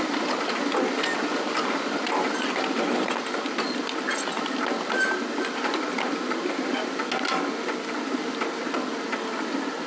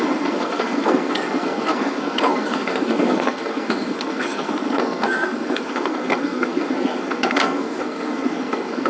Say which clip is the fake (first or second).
second